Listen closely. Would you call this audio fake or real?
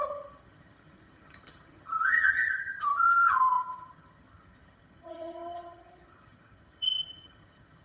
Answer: fake